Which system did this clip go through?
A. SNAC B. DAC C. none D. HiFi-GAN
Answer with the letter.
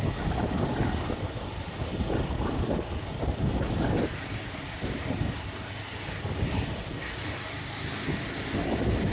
C